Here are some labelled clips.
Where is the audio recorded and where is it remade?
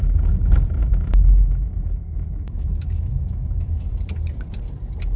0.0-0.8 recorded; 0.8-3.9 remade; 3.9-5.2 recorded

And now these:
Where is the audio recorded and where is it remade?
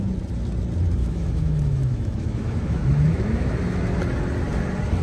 0.0-1.0 recorded; 1.0-4.0 remade; 4.0-5.0 recorded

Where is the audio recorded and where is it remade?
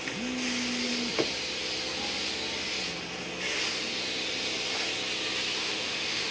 0.0-5.6 recorded; 5.6-6.3 remade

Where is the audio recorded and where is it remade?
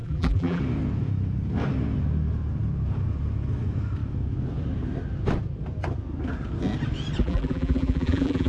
0.0-0.6 remade; 0.6-7.2 recorded; 7.2-8.5 remade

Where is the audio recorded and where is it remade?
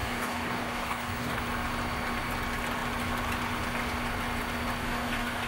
0.0-1.4 remade; 1.4-4.8 recorded; 4.8-5.5 remade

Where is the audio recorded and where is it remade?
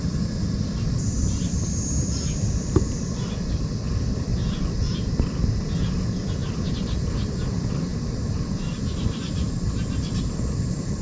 0.0-4.3 remade; 4.3-5.8 recorded; 5.8-6.4 remade; 6.4-7.5 recorded; 7.5-7.9 remade; 7.9-8.5 recorded; 8.5-11.0 remade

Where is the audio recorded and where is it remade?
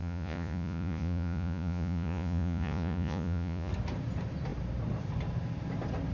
0.0-3.7 remade; 3.7-6.1 recorded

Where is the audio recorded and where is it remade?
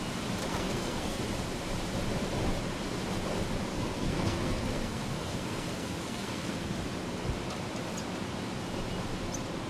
0.0-0.5 recorded; 0.5-1.2 remade; 1.2-3.7 recorded; 3.7-6.8 remade; 6.8-9.7 recorded